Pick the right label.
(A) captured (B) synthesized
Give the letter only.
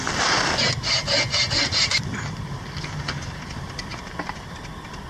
A